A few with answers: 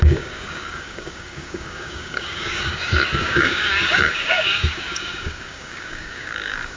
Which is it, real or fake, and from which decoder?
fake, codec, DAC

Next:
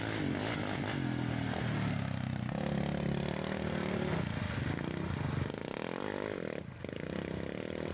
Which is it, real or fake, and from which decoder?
real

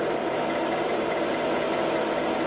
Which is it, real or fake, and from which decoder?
real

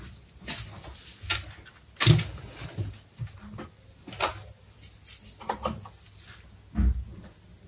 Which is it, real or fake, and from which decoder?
real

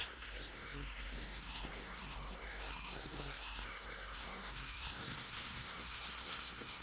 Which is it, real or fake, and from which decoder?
fake, codec, SNAC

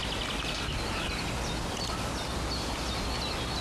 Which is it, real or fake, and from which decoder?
real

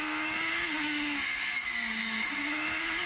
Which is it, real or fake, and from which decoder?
fake, autoencoder, DAC-VAE